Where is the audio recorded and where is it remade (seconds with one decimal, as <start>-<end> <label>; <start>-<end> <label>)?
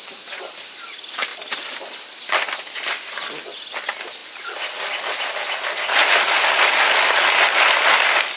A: 0.0-8.4 recorded